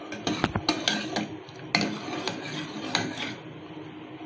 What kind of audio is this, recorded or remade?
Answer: recorded